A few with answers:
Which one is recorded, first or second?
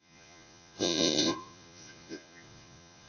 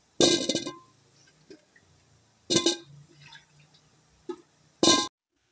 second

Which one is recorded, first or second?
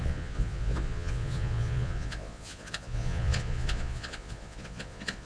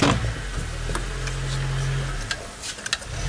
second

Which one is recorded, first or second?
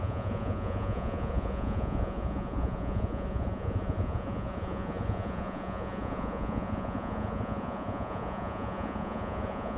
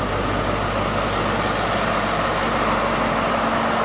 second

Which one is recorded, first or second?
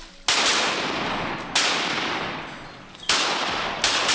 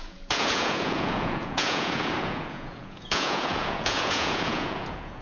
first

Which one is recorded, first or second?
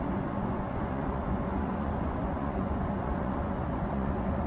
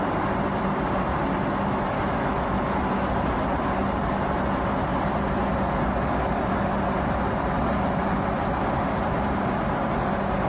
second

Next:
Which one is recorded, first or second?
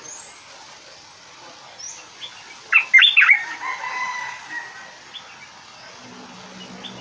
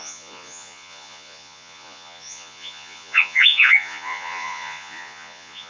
first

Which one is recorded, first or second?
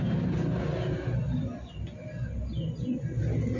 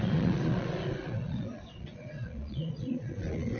first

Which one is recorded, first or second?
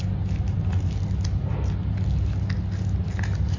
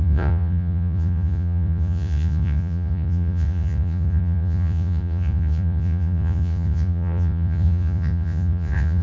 first